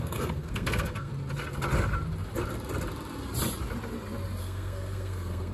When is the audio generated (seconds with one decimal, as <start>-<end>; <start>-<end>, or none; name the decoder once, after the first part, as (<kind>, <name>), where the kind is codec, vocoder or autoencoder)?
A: 0.0-1.1 (codec, SNAC); 4.4-5.5